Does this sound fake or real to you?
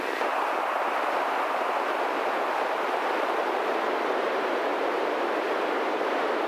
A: real